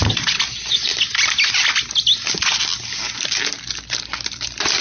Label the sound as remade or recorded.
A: recorded